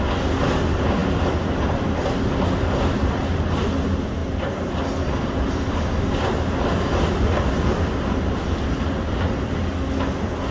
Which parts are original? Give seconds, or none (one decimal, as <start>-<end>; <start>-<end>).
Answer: 0.0-10.5